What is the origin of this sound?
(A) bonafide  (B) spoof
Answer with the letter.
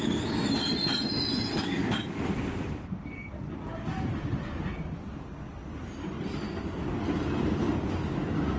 A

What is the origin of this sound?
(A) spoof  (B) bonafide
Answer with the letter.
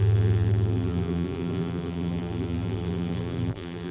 A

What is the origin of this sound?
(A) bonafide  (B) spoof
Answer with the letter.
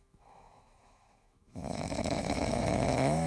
B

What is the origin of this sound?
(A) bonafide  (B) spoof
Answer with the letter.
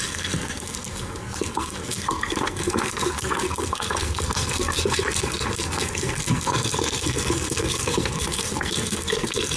B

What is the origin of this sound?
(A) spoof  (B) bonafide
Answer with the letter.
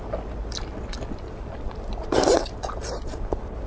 B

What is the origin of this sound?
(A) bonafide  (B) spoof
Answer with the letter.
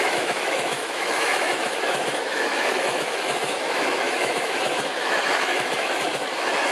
B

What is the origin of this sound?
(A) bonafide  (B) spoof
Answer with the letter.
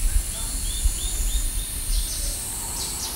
A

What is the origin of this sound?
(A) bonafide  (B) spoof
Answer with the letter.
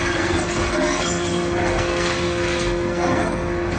B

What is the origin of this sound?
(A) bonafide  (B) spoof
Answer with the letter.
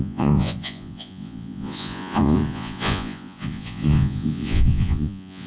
B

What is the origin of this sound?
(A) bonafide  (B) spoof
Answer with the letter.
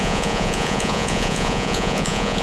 B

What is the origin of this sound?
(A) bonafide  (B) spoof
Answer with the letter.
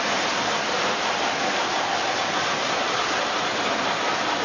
A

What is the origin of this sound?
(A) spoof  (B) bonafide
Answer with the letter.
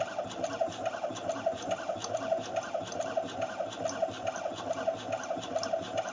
B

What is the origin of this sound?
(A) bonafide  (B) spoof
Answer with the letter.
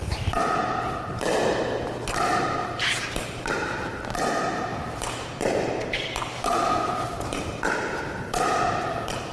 B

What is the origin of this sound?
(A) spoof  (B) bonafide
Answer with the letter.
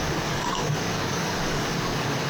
A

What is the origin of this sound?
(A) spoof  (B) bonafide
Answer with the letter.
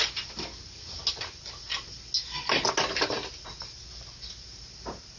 B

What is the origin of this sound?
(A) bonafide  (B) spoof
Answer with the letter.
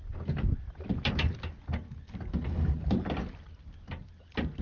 A